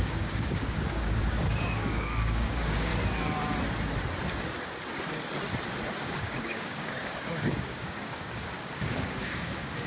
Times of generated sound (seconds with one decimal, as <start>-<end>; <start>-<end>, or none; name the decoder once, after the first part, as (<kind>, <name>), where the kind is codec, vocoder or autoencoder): 0.0-2.9 (codec, DAC); 5.9-9.9

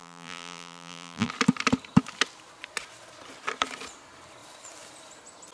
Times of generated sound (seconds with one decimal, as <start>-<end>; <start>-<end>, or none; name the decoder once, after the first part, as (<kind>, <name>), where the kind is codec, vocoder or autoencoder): 0.0-1.3 (vocoder, BigVGAN v2)